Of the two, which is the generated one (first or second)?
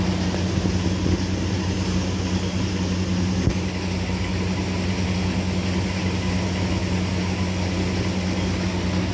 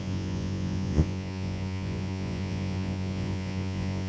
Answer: second